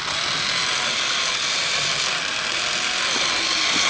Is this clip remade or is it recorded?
recorded